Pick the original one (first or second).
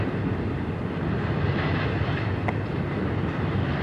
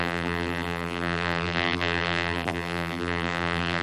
first